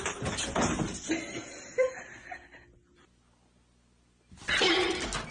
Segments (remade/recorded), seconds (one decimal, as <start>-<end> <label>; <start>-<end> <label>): 0.0-5.3 recorded